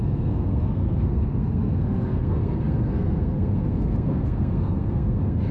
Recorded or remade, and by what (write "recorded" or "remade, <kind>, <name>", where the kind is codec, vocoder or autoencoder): remade, codec, SNAC